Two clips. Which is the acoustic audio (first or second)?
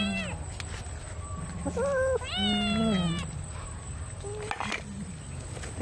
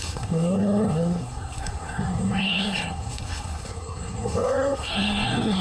first